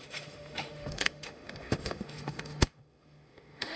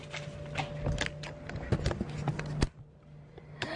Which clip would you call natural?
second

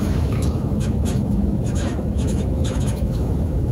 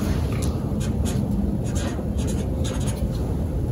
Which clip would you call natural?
second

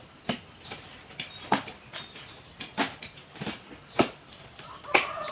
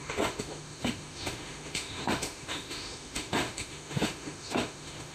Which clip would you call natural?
first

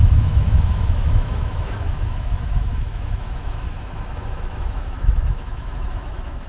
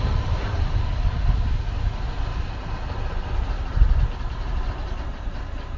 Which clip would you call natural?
second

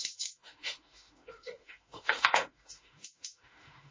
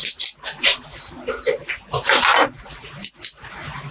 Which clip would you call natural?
second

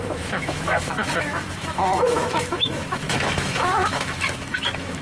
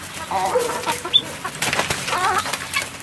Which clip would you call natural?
second